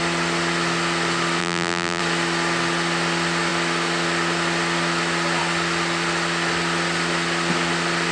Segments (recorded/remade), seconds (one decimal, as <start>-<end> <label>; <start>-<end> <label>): 0.0-1.4 recorded; 1.4-2.0 remade; 2.0-8.1 recorded